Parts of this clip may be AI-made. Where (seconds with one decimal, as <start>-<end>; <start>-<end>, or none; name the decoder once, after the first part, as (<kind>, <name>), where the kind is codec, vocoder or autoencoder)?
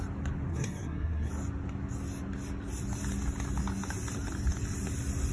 0.5-1.3 (codec, SNAC)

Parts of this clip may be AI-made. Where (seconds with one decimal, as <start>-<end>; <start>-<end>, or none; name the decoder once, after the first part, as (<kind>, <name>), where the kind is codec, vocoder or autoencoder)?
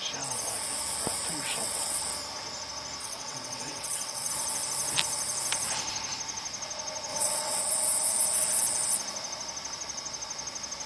1.3-2.0 (vocoder, WaveNeXt); 3.0-4.3; 7.1-7.6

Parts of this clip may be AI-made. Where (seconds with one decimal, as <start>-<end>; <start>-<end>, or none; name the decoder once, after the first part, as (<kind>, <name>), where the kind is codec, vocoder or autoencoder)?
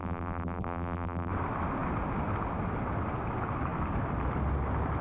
0.0-1.3 (vocoder, BigVGAN v2)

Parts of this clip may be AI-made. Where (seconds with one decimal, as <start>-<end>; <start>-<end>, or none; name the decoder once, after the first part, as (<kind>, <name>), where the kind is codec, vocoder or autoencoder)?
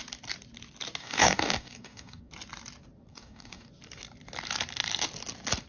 1.0-2.3 (codec, DAC); 3.1-3.7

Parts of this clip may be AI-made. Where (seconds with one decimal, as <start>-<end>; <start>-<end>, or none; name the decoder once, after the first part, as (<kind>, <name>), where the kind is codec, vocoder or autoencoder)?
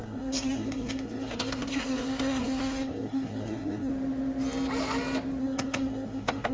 0.0-3.9 (codec, SNAC); 5.4-6.5